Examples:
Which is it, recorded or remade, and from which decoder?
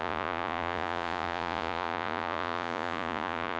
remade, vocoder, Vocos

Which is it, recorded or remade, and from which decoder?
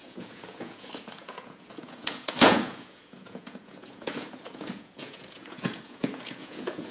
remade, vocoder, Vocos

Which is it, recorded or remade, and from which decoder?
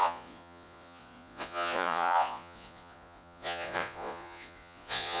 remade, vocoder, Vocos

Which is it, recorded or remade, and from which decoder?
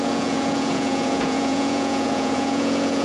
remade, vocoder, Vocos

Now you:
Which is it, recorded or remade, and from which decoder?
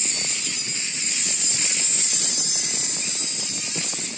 recorded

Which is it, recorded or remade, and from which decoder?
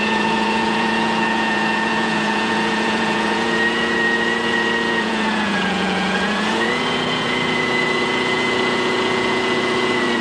remade, vocoder, Vocos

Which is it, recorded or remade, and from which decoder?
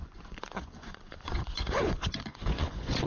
remade, vocoder, Vocos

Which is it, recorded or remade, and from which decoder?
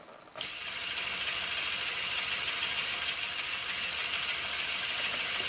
recorded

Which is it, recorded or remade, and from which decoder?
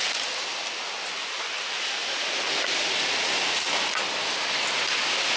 recorded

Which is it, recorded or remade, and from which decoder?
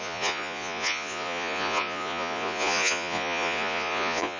remade, vocoder, Vocos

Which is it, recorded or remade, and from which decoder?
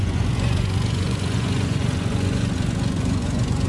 remade, vocoder, Vocos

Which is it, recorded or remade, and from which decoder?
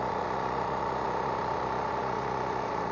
remade, vocoder, Vocos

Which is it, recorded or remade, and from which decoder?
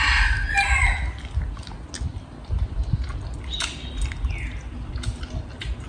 recorded